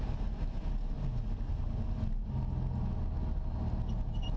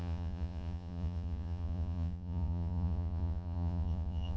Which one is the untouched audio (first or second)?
first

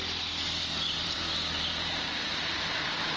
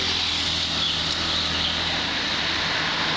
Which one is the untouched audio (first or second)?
second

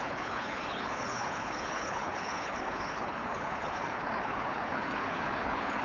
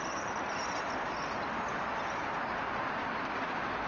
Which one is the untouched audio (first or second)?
second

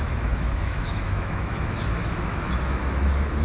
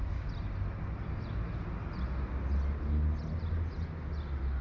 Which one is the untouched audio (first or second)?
second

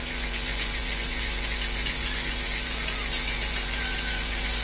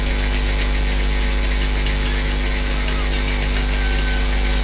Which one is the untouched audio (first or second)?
second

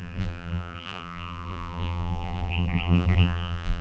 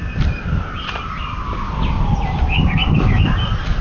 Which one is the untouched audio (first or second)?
second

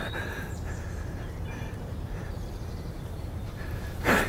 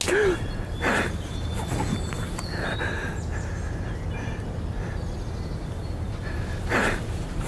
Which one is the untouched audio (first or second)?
second